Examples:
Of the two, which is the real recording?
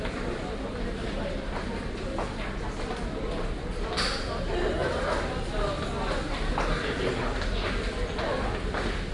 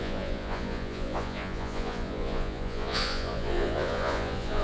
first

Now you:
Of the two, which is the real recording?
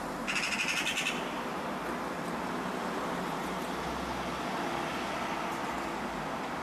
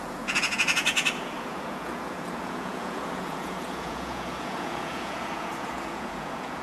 first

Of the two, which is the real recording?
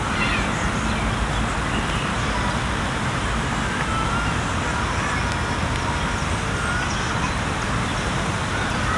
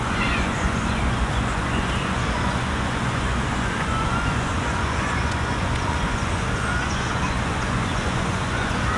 first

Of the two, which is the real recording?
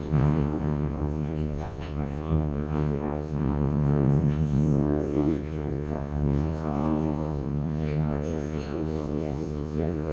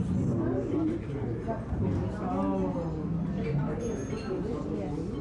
second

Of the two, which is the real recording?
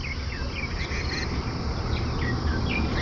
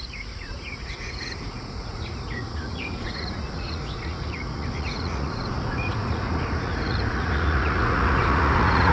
first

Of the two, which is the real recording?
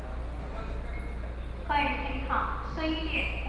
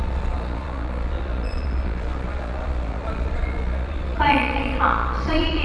first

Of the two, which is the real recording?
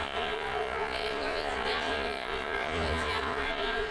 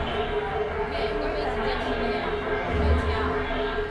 second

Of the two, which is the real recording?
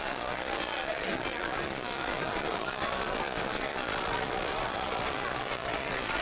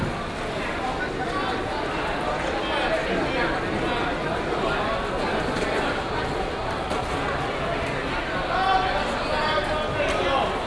second